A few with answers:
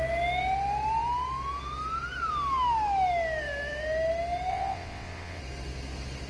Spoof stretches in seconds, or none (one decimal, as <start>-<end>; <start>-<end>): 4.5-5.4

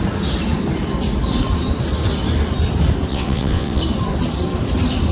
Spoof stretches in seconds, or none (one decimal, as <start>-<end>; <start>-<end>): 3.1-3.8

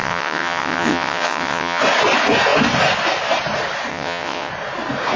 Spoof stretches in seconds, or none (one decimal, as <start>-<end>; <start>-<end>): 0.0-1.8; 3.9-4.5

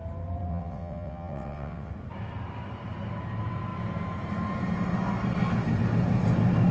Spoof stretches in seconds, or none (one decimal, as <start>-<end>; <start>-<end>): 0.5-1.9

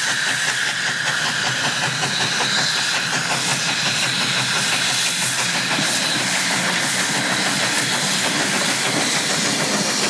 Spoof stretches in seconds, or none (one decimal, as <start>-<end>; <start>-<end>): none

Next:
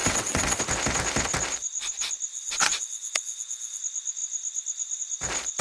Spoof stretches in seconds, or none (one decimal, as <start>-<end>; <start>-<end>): 0.0-0.6; 2.3-3.8

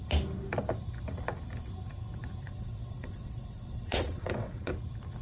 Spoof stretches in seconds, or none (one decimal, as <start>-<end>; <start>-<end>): 2.4-4.7